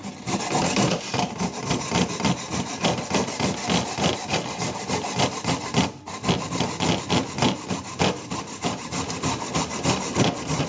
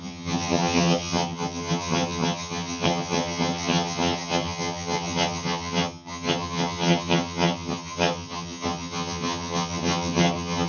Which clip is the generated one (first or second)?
second